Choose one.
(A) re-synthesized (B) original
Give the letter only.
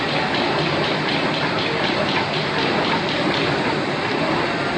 B